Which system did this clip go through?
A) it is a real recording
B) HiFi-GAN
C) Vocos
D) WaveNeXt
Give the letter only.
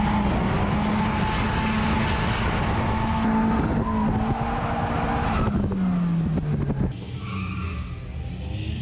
A